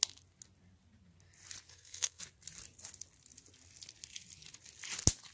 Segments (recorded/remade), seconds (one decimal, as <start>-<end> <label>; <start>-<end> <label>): 0.0-1.7 recorded; 1.7-2.2 remade; 2.2-5.3 recorded

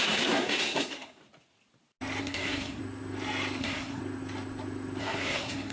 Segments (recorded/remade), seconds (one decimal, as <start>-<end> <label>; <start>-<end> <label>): 0.0-1.2 remade; 1.2-2.2 recorded; 2.2-2.8 remade; 2.8-3.6 recorded; 3.6-4.0 remade; 4.0-5.0 recorded; 5.0-5.7 remade

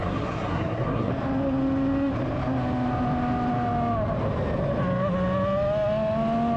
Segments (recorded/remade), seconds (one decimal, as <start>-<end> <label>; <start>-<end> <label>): 0.0-1.1 remade; 1.1-6.6 recorded